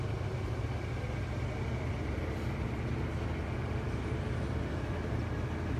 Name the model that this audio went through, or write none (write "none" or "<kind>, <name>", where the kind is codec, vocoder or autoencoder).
none